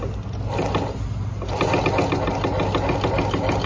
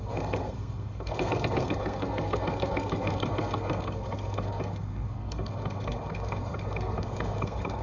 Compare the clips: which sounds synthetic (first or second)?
second